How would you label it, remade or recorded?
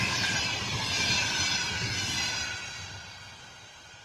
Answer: recorded